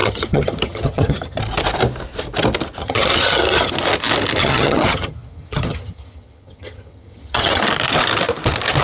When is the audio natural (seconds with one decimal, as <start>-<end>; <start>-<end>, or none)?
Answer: 1.4-2.8; 3.7-4.4; 7.6-8.8